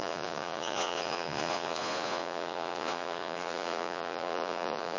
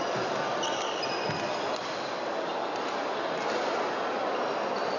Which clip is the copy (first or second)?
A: first